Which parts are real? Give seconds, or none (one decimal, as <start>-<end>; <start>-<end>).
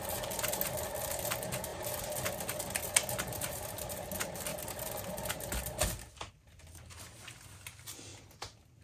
0.0-8.8